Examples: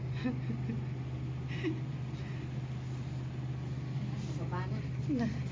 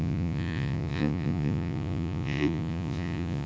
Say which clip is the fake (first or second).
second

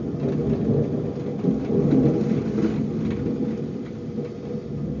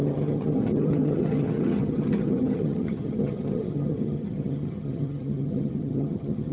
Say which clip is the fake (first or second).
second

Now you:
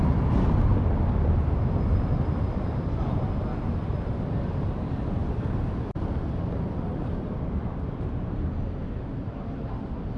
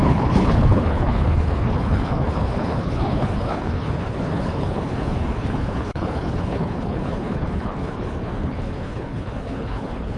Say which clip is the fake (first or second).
second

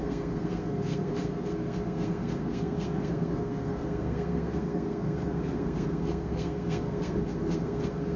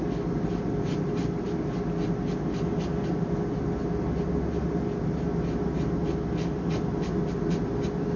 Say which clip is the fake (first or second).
first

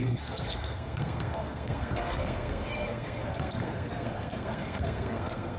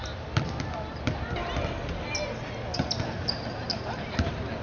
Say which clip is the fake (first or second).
first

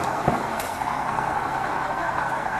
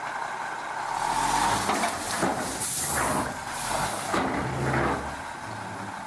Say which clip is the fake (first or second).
first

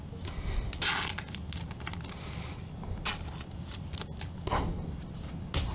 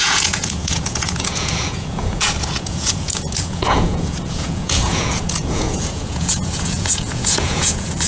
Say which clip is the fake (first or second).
second